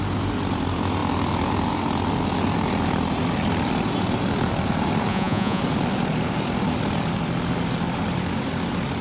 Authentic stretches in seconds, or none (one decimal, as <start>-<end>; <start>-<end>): 0.0-5.1; 5.6-9.0

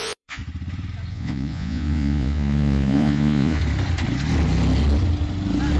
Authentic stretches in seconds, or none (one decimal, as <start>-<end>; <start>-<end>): 0.4-1.1; 3.6-5.8

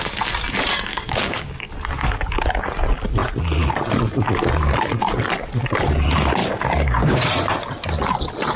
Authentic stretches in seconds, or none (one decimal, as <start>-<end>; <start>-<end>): 0.0-0.9; 1.7-6.4; 7.3-8.6

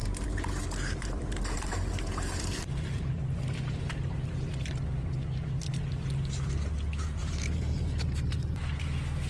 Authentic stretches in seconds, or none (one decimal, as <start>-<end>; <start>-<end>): 3.1-7.2; 8.8-9.3

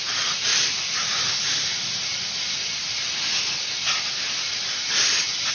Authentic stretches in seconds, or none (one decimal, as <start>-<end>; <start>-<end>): 0.0-5.5

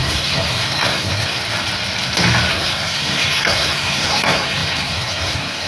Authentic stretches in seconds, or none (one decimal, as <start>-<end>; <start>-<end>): 1.4-2.5

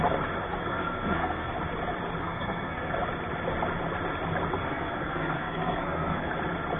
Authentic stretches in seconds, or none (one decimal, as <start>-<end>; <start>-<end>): 0.0-0.6; 1.5-2.2; 2.9-4.6; 6.3-6.8

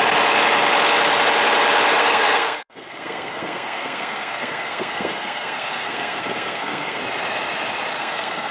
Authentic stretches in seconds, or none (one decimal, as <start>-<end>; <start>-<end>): 0.0-1.9; 7.0-8.0